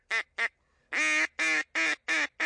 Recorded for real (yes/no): yes